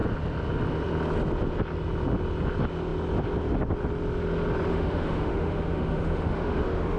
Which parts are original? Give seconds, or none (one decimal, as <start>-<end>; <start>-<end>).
0.0-4.7